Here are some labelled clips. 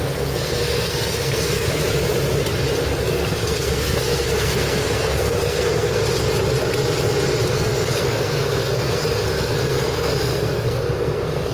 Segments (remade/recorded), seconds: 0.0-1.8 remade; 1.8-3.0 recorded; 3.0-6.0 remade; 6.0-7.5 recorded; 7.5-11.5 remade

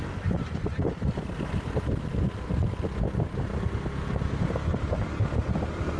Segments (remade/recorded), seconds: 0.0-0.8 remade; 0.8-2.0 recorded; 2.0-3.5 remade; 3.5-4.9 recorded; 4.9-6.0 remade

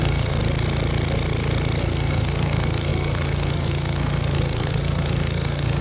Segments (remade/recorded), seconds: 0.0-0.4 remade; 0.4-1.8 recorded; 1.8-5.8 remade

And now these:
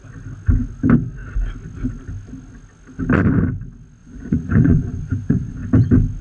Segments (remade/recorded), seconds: 0.0-4.0 recorded; 4.0-5.6 remade; 5.6-6.2 recorded